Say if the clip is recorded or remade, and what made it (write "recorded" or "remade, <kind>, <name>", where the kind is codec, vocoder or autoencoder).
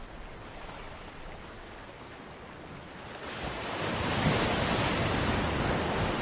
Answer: recorded